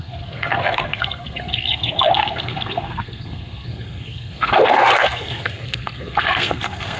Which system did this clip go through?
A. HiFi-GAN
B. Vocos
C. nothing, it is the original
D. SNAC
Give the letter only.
D